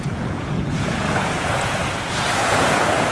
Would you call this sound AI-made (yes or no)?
yes